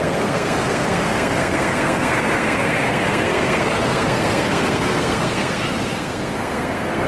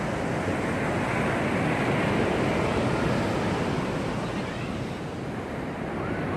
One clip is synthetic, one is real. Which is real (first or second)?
second